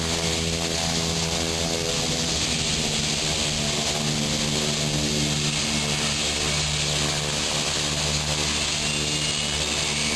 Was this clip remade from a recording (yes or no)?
no